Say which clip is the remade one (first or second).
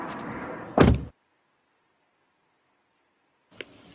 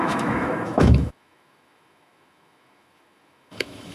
second